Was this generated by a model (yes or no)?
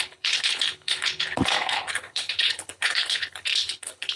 yes